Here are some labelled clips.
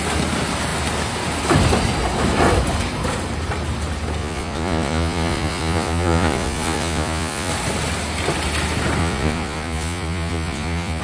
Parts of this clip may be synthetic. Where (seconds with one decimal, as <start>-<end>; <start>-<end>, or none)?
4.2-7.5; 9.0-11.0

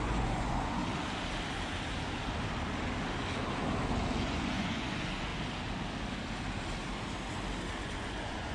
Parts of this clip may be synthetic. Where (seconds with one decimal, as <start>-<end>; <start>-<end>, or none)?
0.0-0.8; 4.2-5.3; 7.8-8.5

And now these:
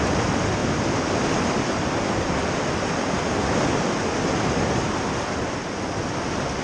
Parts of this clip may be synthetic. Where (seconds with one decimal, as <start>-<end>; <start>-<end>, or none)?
none

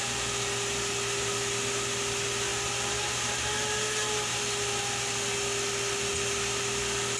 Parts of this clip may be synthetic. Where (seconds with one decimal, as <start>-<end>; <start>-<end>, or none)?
none

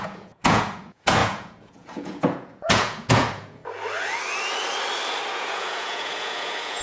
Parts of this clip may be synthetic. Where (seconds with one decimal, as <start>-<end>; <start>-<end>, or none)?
0.0-3.6; 5.3-6.8

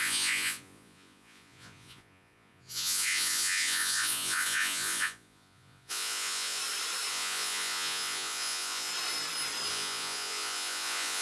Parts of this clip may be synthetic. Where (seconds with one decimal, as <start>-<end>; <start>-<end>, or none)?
0.0-6.6; 7.1-8.9; 9.7-11.2

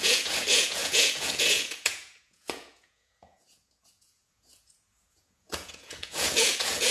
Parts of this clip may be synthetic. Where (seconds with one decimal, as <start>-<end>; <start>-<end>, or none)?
0.0-6.9

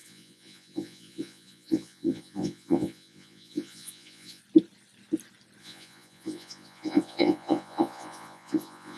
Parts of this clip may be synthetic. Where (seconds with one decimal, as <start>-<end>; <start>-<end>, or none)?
0.0-4.4; 5.6-9.0